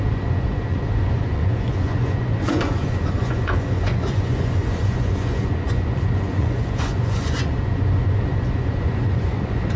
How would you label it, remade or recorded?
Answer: remade